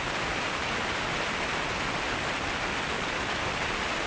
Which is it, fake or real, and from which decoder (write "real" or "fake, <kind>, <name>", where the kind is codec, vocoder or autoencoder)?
real